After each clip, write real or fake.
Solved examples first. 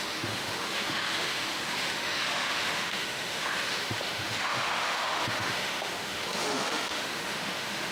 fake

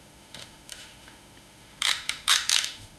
fake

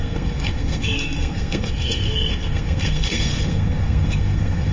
fake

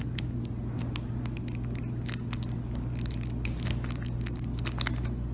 real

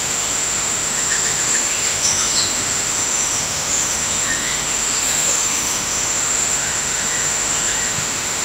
fake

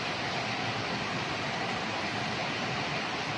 real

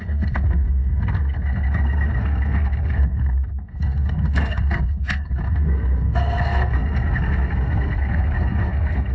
fake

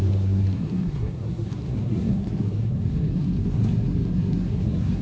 fake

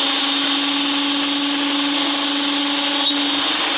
real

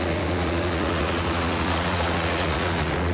fake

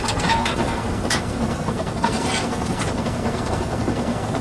fake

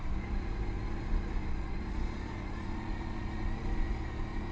fake